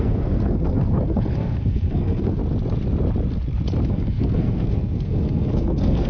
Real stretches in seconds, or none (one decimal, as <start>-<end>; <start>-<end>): 2.4-3.9